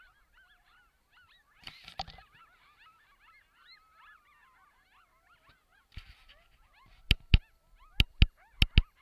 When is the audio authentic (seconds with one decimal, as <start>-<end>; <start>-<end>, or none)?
0.0-9.0